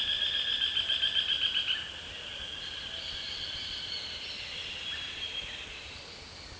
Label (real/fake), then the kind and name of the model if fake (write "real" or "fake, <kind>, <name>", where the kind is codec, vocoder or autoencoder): fake, vocoder, BigVGAN v2